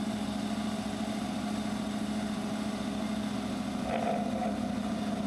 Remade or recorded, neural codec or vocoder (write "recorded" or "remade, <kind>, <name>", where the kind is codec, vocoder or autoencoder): recorded